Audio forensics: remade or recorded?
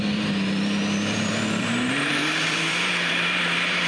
remade